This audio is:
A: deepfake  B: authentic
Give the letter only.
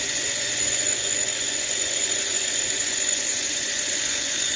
A